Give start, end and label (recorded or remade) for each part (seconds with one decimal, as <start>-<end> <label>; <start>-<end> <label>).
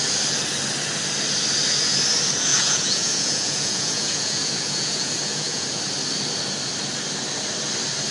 0.0-2.5 recorded; 2.5-5.8 remade; 5.8-8.1 recorded